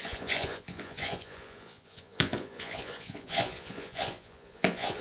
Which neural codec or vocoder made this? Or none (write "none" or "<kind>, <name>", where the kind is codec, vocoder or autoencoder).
vocoder, Vocos